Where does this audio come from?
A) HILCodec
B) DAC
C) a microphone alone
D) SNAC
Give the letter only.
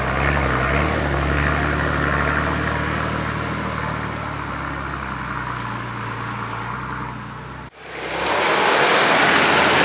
C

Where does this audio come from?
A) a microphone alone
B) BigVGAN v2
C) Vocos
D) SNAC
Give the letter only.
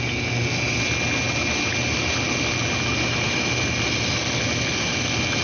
A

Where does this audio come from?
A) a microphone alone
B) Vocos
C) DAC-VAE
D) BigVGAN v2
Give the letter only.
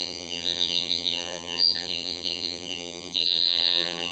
D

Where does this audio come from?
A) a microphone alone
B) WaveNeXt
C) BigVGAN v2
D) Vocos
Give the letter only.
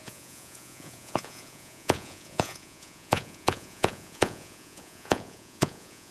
D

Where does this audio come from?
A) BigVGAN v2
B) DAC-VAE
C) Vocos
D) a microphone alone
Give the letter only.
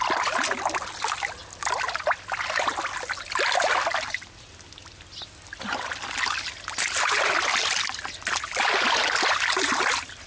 D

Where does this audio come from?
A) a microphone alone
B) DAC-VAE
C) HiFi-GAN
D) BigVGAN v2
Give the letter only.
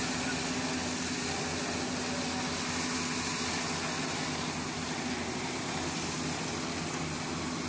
A